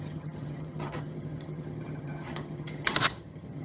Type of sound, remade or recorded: remade